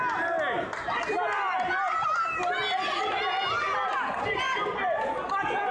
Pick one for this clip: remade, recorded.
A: recorded